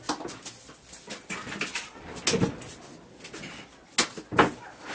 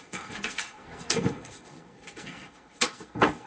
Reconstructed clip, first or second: second